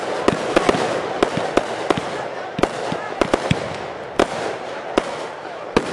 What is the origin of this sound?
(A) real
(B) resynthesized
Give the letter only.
A